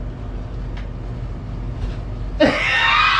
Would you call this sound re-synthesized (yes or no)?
no